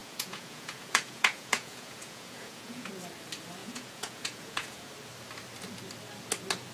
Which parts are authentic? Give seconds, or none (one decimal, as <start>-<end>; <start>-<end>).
2.9-3.6; 4.9-6.7